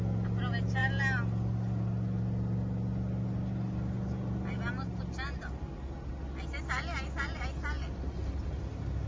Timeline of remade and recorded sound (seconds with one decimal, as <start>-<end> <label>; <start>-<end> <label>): 0.0-9.1 recorded